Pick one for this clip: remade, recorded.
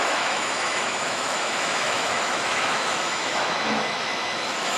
remade